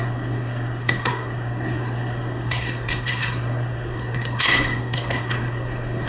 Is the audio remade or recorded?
remade